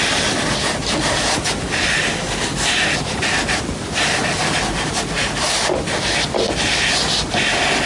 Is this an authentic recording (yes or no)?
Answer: yes